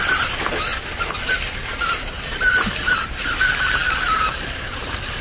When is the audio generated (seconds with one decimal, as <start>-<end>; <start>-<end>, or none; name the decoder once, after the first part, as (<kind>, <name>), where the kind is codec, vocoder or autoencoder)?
none